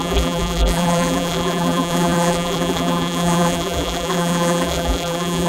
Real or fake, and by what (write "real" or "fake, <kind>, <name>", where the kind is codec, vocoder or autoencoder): fake, vocoder, BigVGAN v2